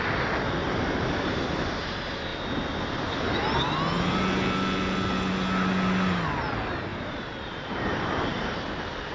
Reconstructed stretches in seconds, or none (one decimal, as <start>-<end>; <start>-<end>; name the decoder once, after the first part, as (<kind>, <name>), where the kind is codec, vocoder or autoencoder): 0.6-1.8 (vocoder, BigVGAN v2); 6.9-8.7